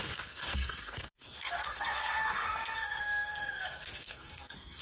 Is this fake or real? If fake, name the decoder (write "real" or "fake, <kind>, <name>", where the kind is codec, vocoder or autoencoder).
fake, codec, SNAC